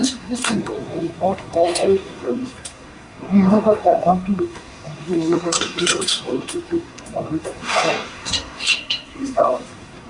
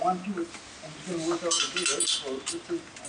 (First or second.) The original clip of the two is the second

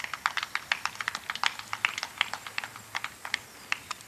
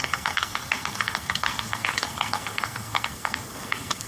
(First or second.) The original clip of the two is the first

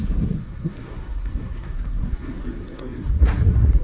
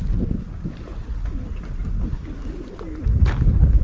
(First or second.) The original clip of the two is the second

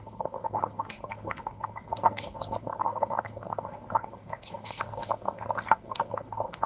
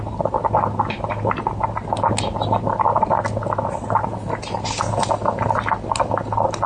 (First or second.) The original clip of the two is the second